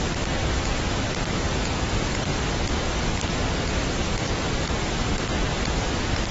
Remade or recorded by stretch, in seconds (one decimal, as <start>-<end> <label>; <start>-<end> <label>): 0.0-2.3 remade; 2.3-5.4 recorded; 5.4-6.3 remade